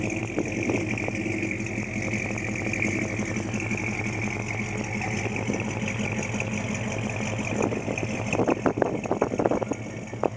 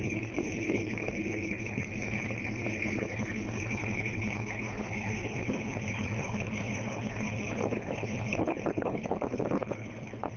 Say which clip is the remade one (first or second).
second